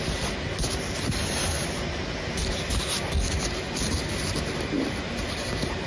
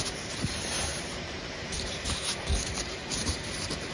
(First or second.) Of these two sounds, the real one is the first